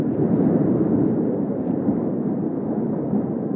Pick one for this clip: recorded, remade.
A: recorded